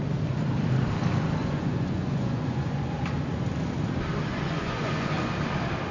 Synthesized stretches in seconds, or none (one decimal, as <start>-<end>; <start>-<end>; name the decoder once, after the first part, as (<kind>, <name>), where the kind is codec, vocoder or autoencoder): 1.4-3.0 (vocoder, Vocos); 4.3-5.3